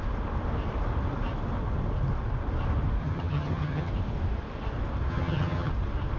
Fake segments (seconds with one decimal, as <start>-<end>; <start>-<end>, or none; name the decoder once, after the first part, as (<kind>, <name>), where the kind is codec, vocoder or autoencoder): 3.0-3.9 (vocoder, HiFi-GAN); 5.1-5.7